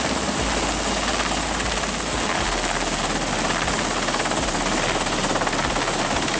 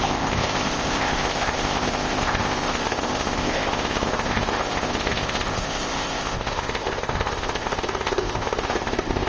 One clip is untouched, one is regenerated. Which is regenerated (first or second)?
second